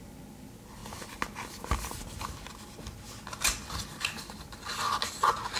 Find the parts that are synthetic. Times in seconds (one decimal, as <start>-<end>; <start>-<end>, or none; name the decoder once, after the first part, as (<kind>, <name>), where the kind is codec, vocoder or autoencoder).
none